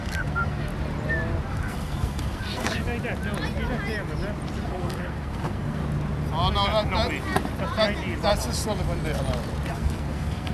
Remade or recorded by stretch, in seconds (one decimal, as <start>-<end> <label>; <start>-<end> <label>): 0.0-0.7 remade; 0.7-1.5 recorded; 1.5-2.8 remade; 2.8-4.6 recorded; 4.6-5.8 remade; 5.8-9.7 recorded; 9.7-10.5 remade

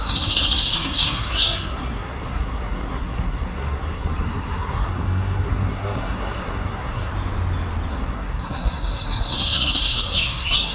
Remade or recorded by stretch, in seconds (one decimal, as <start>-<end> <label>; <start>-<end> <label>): 0.0-7.1 remade; 7.1-7.9 recorded; 7.9-10.7 remade

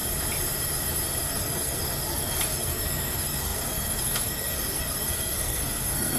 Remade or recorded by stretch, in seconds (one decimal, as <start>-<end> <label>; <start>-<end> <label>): 0.0-1.2 recorded; 1.2-6.2 remade